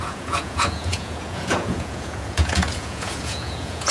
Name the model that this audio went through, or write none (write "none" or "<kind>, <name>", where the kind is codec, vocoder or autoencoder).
vocoder, Vocos